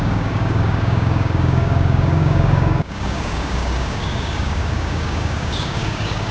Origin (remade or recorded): remade